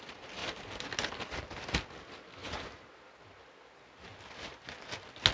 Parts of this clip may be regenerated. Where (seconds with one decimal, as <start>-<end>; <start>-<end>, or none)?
none